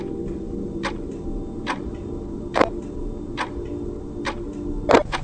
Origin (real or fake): real